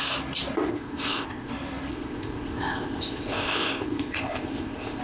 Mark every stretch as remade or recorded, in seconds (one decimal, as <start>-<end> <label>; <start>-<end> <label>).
0.0-0.7 recorded; 0.7-1.5 remade; 1.5-1.9 recorded; 1.9-5.0 remade